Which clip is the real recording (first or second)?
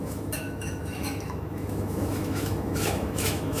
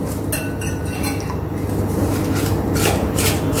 second